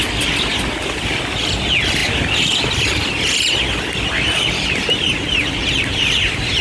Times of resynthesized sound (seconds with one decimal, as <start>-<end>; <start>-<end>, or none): none